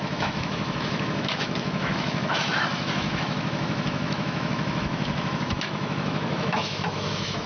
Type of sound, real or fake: fake